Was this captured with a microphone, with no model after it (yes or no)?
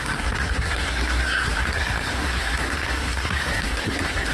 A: no